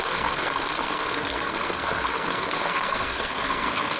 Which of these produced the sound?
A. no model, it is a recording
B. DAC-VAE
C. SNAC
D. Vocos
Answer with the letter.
C